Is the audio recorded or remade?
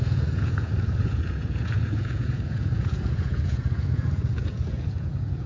remade